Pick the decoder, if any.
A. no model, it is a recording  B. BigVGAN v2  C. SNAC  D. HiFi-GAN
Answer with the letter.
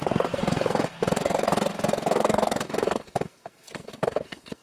C